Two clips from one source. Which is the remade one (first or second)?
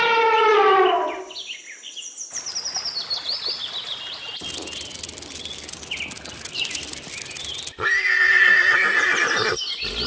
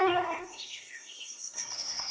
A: second